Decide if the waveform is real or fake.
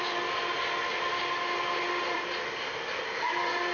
real